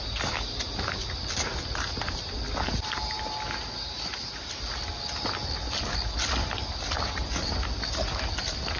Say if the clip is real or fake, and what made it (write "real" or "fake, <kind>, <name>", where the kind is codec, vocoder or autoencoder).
real